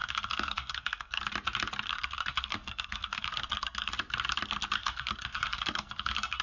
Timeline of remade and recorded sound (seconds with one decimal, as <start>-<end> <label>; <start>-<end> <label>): 0.0-1.2 remade; 1.2-1.9 recorded; 1.9-3.9 remade; 3.9-4.8 recorded; 4.8-6.4 remade